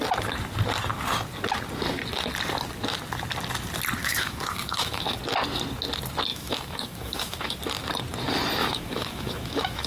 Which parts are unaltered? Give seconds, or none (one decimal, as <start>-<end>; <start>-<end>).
0.0-4.0; 5.2-6.3; 7.6-8.6